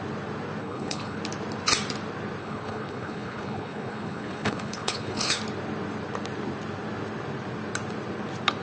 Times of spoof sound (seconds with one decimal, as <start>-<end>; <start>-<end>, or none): 0.6-1.2; 2.4-5.4